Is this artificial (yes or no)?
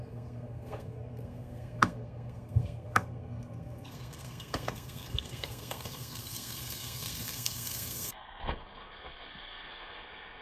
yes